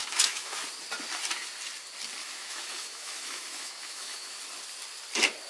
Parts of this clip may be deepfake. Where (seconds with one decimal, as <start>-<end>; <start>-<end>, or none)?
0.0-0.6; 2.2-4.4